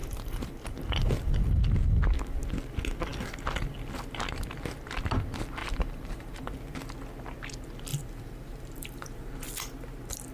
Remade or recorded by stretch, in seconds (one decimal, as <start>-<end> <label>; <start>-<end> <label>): 0.0-0.5 remade; 0.5-5.6 recorded; 5.6-6.5 remade; 6.5-7.9 recorded; 7.9-9.3 remade; 9.3-10.3 recorded